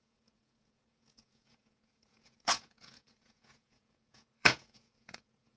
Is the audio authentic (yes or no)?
no